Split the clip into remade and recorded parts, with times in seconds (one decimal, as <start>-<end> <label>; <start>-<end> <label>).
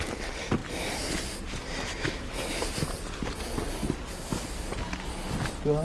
0.0-1.9 recorded; 1.9-2.6 remade; 2.6-5.8 recorded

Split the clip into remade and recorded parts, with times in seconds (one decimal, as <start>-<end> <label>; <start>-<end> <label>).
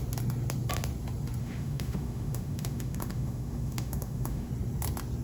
0.0-1.4 recorded; 1.4-4.5 remade; 4.5-5.2 recorded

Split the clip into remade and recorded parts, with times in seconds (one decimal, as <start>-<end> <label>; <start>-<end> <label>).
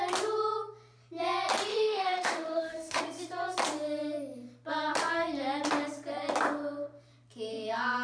0.0-1.7 recorded; 1.7-3.0 remade; 3.0-8.0 recorded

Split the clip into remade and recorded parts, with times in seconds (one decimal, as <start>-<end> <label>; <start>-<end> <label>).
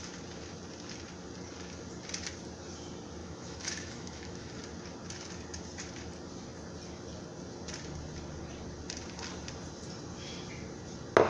0.0-3.2 recorded; 3.2-4.5 remade; 4.5-11.3 recorded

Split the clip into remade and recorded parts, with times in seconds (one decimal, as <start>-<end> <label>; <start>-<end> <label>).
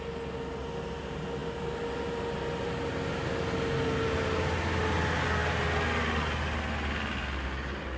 0.0-8.0 recorded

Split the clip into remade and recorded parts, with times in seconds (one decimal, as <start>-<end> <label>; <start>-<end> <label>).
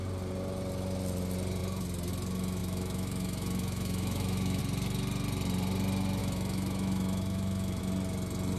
0.0-2.6 recorded; 2.6-4.6 remade; 4.6-6.2 recorded; 6.2-7.8 remade; 7.8-8.6 recorded